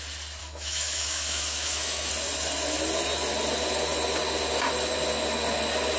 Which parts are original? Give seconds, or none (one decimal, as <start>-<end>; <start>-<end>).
0.0-0.4; 2.1-6.0